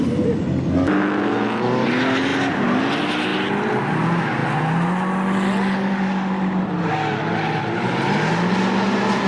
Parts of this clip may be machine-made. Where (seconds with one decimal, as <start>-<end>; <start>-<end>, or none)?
none